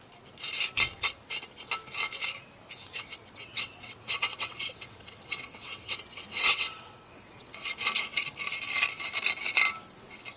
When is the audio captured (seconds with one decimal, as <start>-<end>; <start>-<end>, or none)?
0.0-2.8; 7.7-10.4